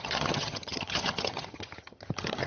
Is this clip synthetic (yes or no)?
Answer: yes